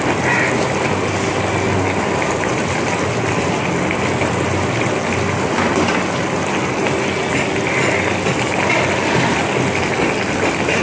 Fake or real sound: real